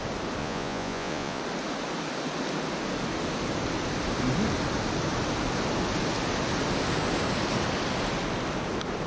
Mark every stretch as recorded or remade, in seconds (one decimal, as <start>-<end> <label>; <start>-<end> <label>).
0.0-0.4 recorded; 0.4-1.4 remade; 1.4-9.1 recorded